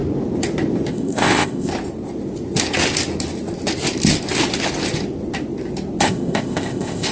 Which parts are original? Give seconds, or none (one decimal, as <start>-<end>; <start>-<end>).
0.0-0.9; 1.7-6.0